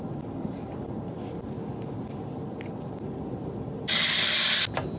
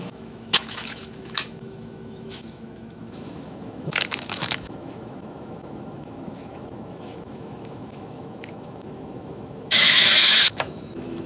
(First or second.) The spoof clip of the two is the second